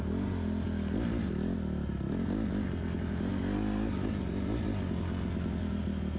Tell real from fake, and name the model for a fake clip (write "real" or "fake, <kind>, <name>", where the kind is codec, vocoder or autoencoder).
real